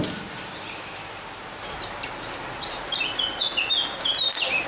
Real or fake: real